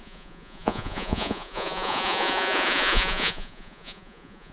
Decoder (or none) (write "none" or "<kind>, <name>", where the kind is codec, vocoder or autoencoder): vocoder, Vocos